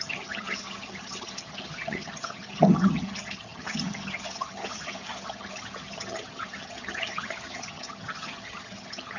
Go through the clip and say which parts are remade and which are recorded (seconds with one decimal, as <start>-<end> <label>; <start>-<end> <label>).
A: 0.0-9.2 remade